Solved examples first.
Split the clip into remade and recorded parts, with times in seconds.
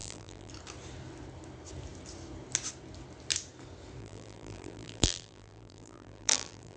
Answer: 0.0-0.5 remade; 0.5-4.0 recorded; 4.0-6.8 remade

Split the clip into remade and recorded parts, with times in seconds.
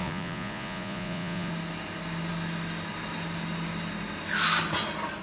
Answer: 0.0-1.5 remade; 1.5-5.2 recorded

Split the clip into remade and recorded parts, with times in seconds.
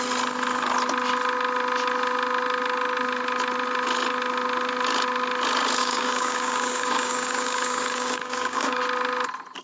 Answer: 0.0-5.8 recorded; 5.8-8.8 remade; 8.8-9.6 recorded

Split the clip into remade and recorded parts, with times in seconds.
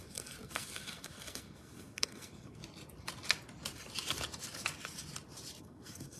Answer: 0.0-2.6 remade; 2.6-5.6 recorded; 5.6-6.2 remade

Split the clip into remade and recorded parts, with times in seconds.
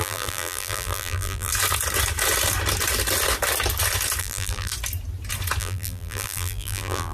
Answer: 0.0-1.5 remade; 1.5-4.2 recorded; 4.2-4.7 remade; 4.7-5.6 recorded; 5.6-7.1 remade